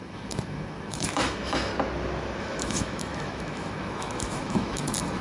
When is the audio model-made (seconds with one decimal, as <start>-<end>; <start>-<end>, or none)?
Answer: 0.0-1.7; 2.4-5.2